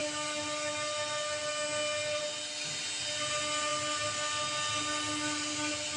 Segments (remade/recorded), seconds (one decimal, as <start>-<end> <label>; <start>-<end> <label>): 0.0-6.0 recorded

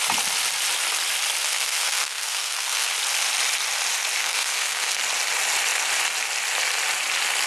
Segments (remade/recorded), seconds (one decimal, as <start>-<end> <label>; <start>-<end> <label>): 0.0-1.4 recorded; 1.4-2.9 remade; 2.9-4.2 recorded; 4.2-5.0 remade; 5.0-7.5 recorded

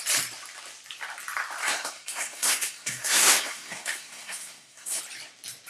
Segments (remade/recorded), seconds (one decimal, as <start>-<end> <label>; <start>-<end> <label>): 0.0-1.6 recorded; 1.6-5.0 remade; 5.0-5.7 recorded

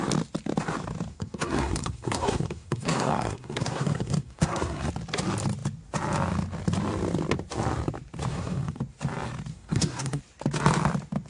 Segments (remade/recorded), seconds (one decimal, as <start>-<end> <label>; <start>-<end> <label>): 0.0-1.1 recorded; 1.1-4.9 remade; 4.9-8.3 recorded; 8.3-8.8 remade; 8.8-9.5 recorded; 9.5-10.2 remade; 10.2-11.3 recorded

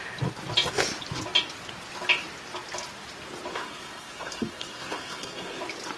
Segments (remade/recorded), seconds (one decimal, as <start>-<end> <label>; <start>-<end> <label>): 0.0-3.5 recorded; 3.5-5.6 remade; 5.6-6.0 recorded

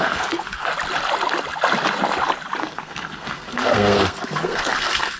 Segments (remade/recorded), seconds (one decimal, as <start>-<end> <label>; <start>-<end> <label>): 0.0-0.7 remade; 0.7-2.6 recorded; 2.6-5.2 remade

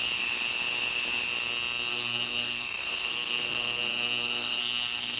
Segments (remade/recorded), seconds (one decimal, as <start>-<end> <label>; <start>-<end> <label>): 0.0-1.9 recorded; 1.9-5.2 remade

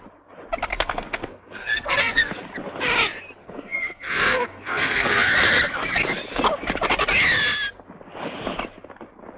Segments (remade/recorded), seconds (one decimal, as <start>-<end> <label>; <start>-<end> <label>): 0.0-0.7 recorded; 0.7-2.4 remade; 2.4-3.4 recorded; 3.4-5.3 remade; 5.3-9.4 recorded